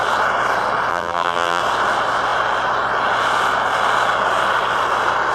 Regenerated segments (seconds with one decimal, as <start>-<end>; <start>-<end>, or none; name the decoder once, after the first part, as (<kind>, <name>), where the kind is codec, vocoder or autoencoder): 0.9-1.6 (vocoder, BigVGAN v2)